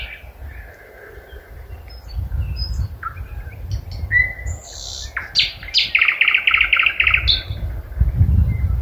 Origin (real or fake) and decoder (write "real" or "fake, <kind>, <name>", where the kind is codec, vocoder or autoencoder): real